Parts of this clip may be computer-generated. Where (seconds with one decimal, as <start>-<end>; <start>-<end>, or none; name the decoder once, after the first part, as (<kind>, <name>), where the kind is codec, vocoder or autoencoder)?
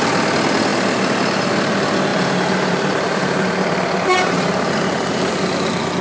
0.7-1.5 (vocoder, BigVGAN v2); 2.1-5.3